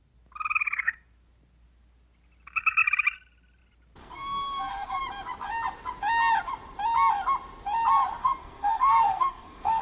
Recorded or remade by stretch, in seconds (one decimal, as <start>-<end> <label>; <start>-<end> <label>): 0.0-4.0 recorded; 4.0-5.0 remade; 5.0-8.2 recorded; 8.2-9.8 remade